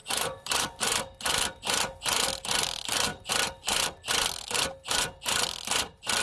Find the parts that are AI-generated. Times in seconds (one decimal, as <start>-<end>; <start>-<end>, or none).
0.0-0.8